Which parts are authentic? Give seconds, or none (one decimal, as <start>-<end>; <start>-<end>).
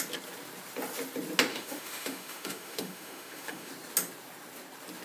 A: 0.0-1.5; 3.7-5.0